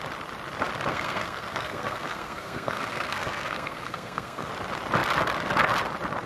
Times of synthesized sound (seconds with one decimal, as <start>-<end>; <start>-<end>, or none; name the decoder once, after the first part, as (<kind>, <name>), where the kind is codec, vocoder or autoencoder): 0.9-4.5 (codec, SNAC)